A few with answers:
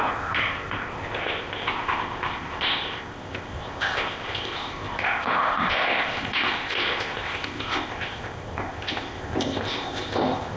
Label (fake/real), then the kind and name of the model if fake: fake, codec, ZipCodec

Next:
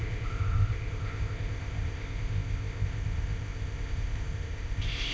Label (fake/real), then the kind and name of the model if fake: fake, codec, ZipCodec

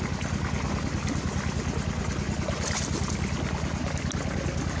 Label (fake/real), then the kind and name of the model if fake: real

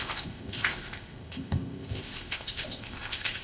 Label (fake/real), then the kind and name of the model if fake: fake, codec, ZipCodec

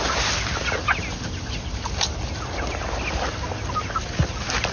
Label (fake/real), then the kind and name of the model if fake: real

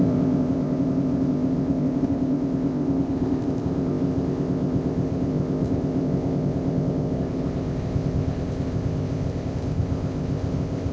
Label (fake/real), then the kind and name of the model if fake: fake, codec, ZipCodec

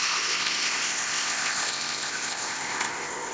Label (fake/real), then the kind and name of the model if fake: fake, codec, ZipCodec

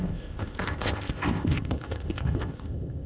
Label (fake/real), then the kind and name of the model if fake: fake, codec, ZipCodec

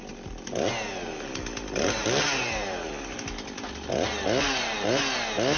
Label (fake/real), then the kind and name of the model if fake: real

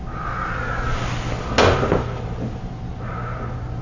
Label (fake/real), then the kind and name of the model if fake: real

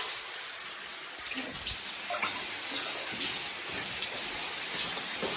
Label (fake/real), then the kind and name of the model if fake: real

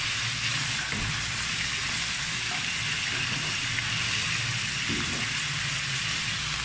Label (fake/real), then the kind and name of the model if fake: real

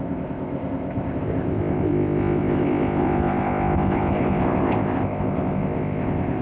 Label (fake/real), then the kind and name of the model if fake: fake, codec, ZipCodec